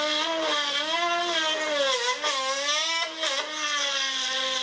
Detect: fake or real real